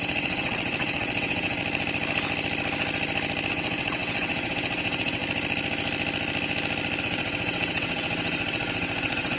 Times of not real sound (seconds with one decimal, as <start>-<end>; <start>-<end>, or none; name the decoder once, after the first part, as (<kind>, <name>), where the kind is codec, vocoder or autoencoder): 0.0-1.6 (vocoder, WaveNeXt); 3.5-5.2; 7.0-9.4